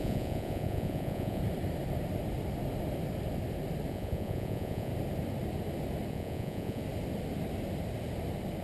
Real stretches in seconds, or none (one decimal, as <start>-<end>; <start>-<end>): 1.4-3.9; 4.9-6.1; 6.8-8.6